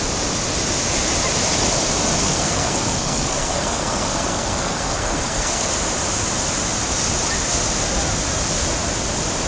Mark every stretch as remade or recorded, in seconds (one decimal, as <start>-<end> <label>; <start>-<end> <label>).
0.0-2.2 recorded; 2.2-5.7 remade; 5.7-9.5 recorded